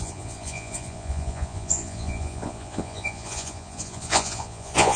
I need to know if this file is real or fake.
fake